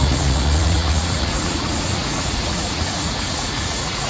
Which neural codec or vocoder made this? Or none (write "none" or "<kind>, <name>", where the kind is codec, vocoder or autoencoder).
vocoder, Vocos